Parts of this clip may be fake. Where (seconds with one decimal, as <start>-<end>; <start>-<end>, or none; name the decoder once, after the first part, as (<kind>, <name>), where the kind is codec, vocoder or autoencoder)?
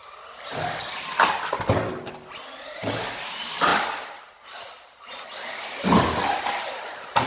2.6-3.7 (vocoder, BigVGAN v2); 6.6-7.3